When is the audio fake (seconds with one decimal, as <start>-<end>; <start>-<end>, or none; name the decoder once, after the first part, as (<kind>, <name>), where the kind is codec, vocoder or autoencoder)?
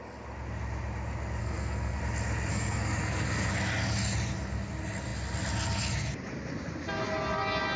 1.4-2.0 (codec, SNAC); 2.5-3.5